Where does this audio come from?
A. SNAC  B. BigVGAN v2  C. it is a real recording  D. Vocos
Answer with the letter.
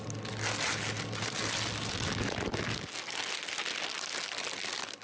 C